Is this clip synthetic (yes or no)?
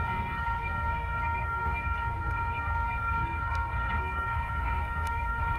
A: yes